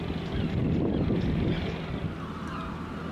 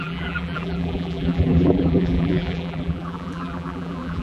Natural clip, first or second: first